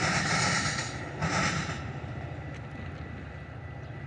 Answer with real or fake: real